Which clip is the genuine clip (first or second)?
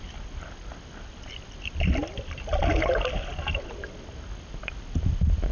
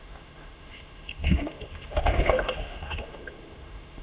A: first